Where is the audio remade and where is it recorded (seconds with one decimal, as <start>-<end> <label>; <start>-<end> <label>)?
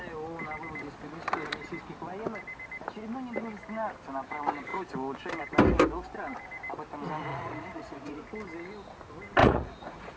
0.0-7.3 recorded; 7.3-8.3 remade; 8.3-9.4 recorded; 9.4-10.2 remade